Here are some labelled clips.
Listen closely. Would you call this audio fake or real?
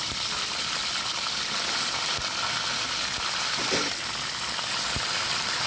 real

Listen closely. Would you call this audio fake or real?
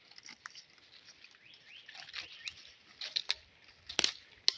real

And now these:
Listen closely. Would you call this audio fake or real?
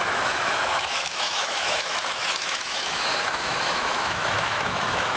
fake